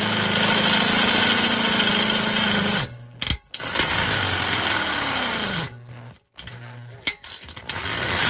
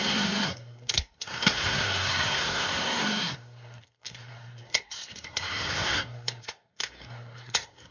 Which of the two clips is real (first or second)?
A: first